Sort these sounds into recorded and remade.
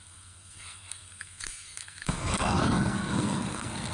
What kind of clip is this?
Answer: remade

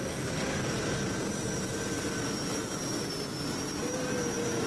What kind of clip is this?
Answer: recorded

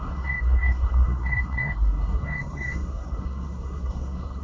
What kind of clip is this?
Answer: remade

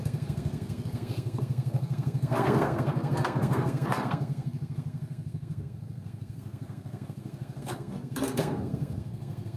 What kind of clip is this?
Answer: remade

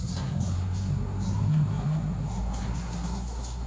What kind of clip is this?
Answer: remade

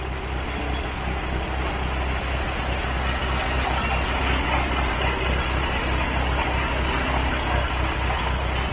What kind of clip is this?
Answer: recorded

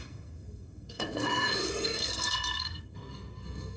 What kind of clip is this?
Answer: remade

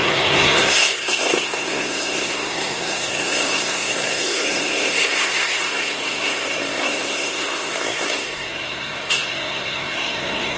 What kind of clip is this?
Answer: remade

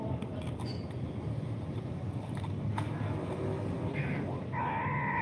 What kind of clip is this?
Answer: recorded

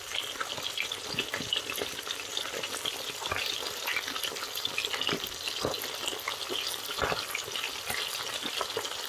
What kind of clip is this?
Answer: recorded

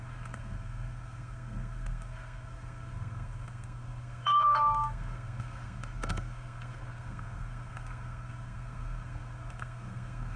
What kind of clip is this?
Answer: remade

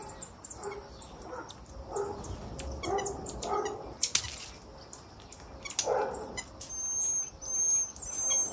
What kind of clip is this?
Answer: recorded